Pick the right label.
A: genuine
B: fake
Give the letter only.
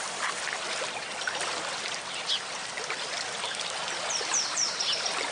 B